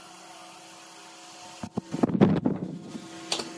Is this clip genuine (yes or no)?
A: yes